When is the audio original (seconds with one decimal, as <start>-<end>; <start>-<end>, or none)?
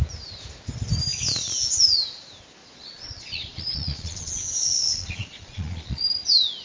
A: 0.0-2.6; 6.0-6.6